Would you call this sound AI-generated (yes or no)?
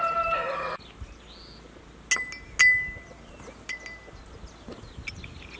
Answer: no